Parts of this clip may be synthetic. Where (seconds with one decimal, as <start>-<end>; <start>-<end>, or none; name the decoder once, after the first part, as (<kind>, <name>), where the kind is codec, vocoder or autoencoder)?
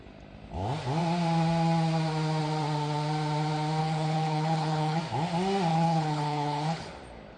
3.8-5.0 (codec, HILCodec); 5.7-6.9